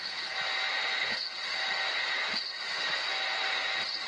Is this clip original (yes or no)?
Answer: yes